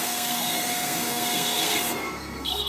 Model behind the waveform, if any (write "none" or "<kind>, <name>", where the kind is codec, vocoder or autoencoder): codec, SNAC